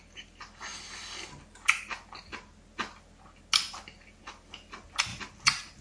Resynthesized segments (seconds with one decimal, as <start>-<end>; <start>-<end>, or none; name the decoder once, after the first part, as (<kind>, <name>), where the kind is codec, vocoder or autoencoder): none